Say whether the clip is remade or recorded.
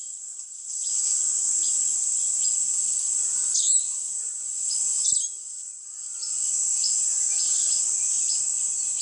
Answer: recorded